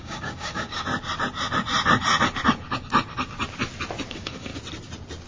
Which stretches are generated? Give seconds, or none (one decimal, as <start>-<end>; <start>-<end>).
0.0-0.9; 4.1-4.5